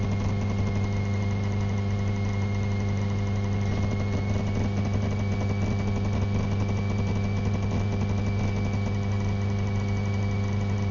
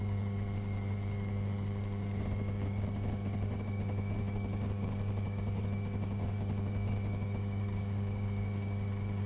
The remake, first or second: second